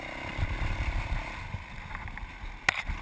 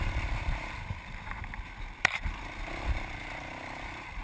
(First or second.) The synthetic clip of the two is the second